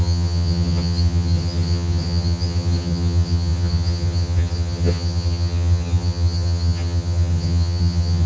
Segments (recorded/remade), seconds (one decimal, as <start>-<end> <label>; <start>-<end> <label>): 0.0-8.3 remade